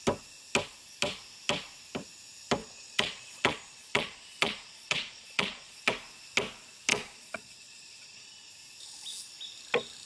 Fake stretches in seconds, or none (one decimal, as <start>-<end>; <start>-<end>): 2.6-5.9; 6.9-8.5